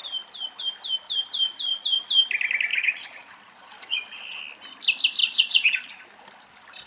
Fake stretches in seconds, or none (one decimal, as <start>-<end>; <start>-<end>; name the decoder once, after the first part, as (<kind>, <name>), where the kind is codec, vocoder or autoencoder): 2.7-4.4 (vocoder, Vocos); 5.2-5.9